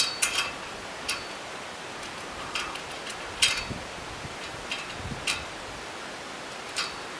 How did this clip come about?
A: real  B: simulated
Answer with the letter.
A